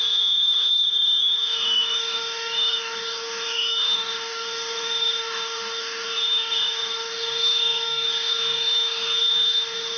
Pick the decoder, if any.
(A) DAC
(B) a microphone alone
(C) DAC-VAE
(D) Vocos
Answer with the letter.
A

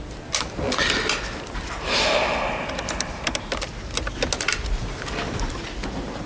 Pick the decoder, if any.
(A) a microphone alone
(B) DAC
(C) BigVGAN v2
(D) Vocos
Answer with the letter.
A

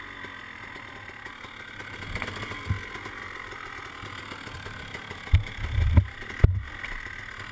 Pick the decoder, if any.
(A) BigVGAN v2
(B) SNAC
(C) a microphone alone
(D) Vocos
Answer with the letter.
C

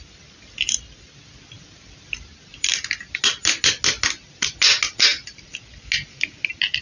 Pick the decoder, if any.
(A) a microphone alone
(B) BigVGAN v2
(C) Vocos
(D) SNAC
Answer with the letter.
A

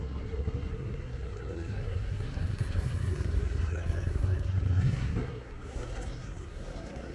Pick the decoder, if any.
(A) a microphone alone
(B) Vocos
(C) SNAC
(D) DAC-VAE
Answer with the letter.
C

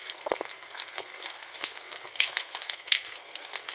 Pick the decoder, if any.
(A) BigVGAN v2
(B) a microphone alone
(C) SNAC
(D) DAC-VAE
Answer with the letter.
C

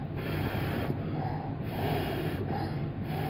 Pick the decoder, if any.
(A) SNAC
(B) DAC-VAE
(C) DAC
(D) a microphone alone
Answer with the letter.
D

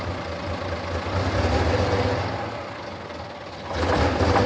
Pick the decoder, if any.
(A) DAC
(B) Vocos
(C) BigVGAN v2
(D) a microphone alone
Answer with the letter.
D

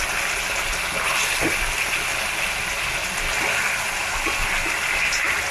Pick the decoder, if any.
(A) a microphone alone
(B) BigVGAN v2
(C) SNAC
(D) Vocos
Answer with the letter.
A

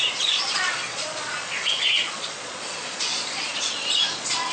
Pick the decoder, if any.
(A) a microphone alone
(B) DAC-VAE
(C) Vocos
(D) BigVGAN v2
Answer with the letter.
C